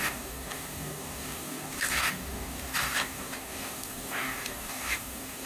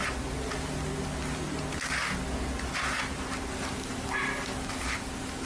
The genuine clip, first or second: second